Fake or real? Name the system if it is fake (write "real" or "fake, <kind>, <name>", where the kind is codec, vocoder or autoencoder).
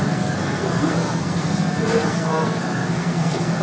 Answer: fake, codec, SNAC